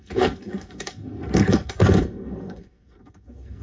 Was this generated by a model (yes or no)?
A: yes